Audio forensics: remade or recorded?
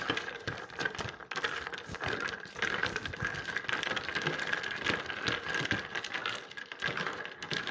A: recorded